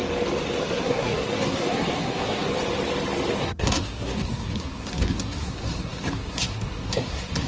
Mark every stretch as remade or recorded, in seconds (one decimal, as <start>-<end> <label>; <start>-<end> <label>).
0.0-0.6 recorded; 0.6-2.5 remade; 2.5-3.4 recorded; 3.4-7.5 remade